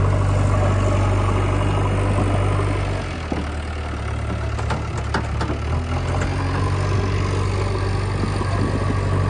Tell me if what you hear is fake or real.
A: real